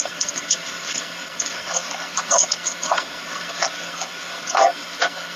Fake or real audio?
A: fake